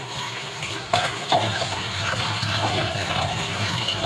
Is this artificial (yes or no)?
yes